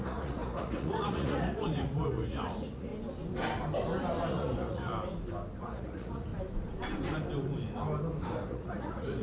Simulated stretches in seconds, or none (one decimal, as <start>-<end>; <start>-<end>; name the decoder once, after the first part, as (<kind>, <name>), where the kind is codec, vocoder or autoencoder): 0.0-2.9 (vocoder, Vocos); 4.3-4.9; 5.6-6.3; 8.5-9.2